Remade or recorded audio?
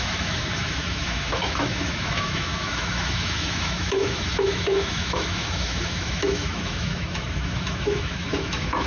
remade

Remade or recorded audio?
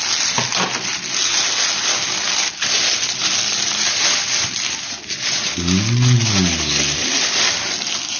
recorded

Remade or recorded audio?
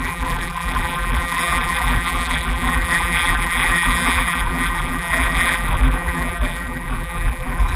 remade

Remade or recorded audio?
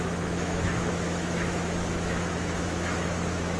remade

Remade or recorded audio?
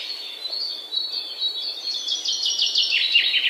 recorded